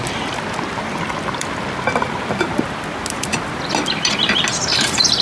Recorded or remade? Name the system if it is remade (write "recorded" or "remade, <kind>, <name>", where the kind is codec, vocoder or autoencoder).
recorded